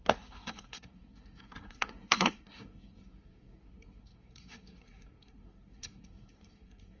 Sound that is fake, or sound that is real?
fake